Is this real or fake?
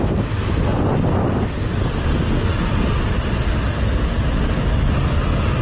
real